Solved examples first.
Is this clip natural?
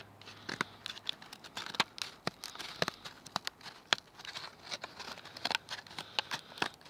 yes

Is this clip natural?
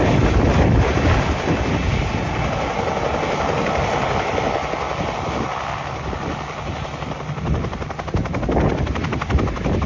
yes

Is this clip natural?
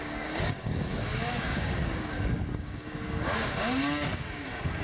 no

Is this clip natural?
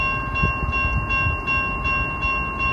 yes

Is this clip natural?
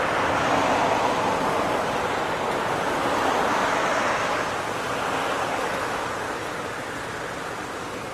yes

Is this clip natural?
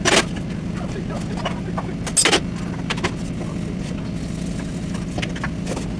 yes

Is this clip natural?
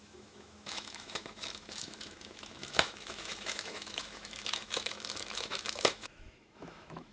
no